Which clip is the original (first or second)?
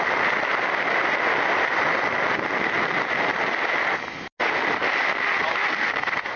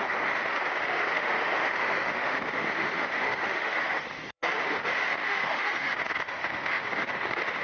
first